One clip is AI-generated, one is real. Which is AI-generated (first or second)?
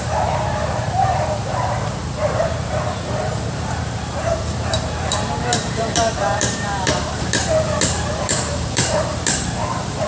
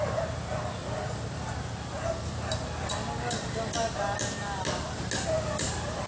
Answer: first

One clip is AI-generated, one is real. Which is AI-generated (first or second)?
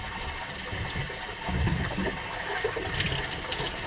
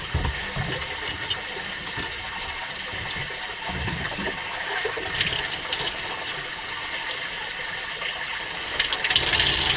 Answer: second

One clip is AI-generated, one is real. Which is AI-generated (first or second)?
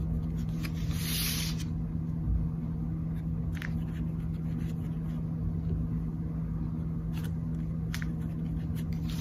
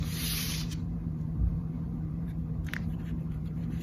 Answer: second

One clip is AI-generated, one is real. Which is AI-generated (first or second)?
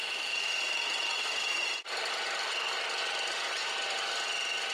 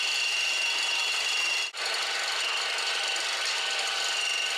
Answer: first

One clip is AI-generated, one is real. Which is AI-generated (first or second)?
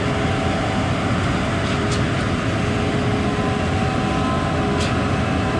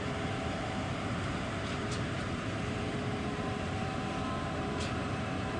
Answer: second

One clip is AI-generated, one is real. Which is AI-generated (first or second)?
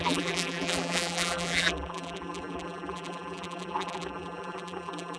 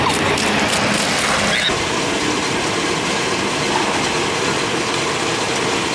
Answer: first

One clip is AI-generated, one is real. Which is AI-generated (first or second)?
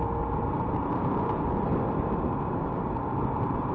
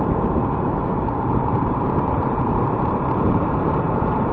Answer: second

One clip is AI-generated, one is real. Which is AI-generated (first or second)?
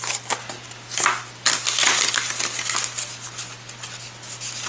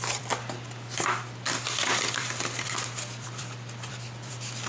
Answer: second